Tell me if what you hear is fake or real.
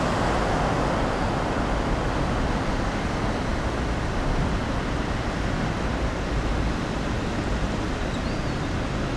real